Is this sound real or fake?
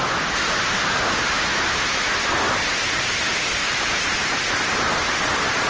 real